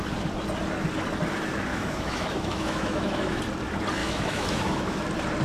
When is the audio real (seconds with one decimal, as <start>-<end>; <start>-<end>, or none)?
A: 0.0-1.7; 3.4-4.0; 5.0-5.4